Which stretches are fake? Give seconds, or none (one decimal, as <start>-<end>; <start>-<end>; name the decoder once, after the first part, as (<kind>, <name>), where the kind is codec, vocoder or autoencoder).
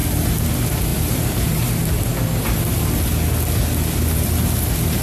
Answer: 0.9-1.7 (vocoder, BigVGAN v2)